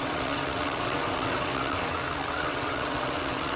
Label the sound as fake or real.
fake